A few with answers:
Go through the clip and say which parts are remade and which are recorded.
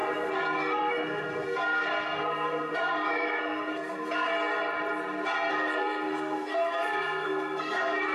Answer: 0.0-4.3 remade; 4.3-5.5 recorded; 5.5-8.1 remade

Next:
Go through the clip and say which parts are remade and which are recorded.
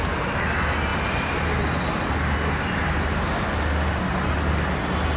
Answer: 0.0-5.2 recorded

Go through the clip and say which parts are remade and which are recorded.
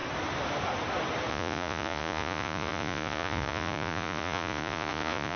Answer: 0.0-1.3 recorded; 1.3-5.4 remade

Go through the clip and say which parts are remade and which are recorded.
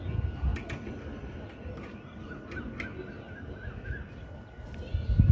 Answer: 0.0-5.3 recorded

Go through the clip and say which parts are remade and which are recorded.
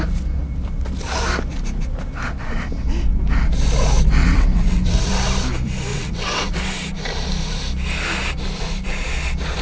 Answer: 0.0-4.2 recorded; 4.2-5.1 remade; 5.1-5.9 recorded; 5.9-6.6 remade; 6.6-9.6 recorded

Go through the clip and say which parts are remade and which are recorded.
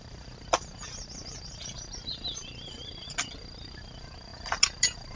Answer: 0.0-5.2 recorded